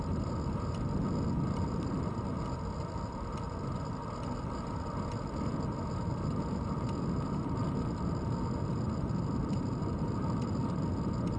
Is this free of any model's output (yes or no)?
yes